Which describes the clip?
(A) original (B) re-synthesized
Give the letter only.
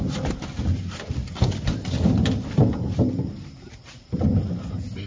A